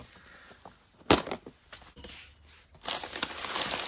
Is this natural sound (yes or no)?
yes